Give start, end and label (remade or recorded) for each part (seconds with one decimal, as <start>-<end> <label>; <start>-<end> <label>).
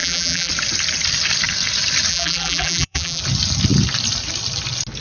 0.0-0.5 remade; 0.5-2.1 recorded; 2.1-3.2 remade; 3.2-5.0 recorded